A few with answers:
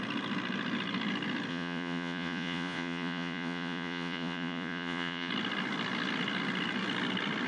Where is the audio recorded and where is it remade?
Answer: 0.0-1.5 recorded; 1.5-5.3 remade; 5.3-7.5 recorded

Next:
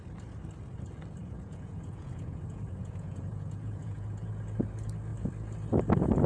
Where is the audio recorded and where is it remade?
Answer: 0.0-1.2 recorded; 1.2-4.3 remade; 4.3-6.3 recorded

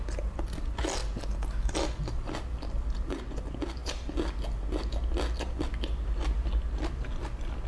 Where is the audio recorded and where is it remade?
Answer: 0.0-7.7 recorded